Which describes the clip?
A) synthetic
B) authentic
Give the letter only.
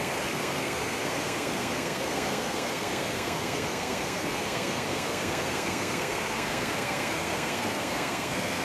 A